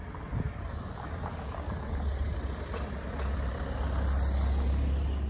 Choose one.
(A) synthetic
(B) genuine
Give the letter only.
B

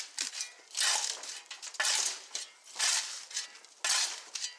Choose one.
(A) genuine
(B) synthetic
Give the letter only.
A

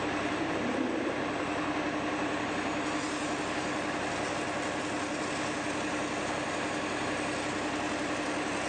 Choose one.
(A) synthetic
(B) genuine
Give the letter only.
A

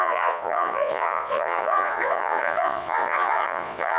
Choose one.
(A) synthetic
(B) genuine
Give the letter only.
A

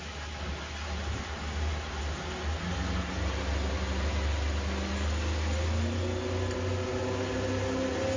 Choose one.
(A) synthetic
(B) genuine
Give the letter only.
B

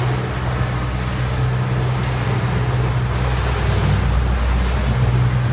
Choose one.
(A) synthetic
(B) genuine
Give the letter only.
B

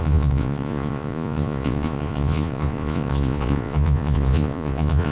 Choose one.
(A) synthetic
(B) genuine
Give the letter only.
A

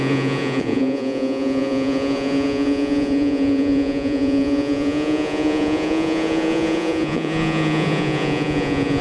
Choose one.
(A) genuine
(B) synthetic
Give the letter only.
B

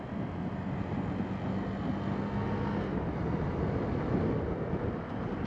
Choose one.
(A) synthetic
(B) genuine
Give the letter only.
B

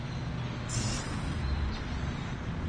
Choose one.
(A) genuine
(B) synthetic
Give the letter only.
A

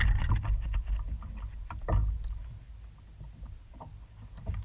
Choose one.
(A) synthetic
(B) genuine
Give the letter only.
B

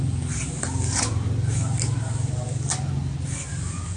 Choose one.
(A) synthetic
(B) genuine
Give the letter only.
B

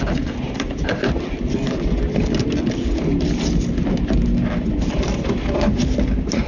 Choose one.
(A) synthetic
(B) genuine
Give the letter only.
B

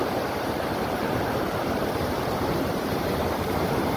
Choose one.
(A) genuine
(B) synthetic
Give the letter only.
B